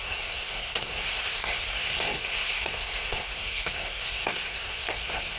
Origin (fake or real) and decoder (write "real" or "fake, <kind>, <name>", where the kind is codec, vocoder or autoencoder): fake, codec, SNAC